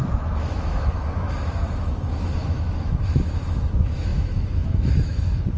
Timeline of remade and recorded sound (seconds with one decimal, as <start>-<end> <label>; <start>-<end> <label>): 0.0-5.6 remade